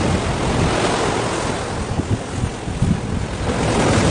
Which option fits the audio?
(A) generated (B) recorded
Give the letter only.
B